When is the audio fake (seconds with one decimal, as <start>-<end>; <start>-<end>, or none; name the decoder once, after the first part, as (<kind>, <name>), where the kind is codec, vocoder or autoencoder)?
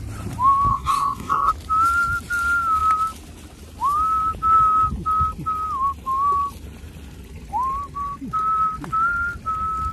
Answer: 0.7-1.5 (codec, SNAC)